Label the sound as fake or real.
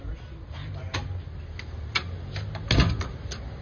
real